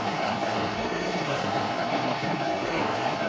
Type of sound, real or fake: fake